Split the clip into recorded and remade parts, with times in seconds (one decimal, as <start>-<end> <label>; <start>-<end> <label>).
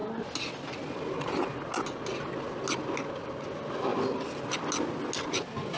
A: 0.0-5.8 recorded